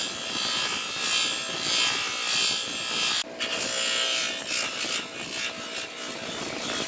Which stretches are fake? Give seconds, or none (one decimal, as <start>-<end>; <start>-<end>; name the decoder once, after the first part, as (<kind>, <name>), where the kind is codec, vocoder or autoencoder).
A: none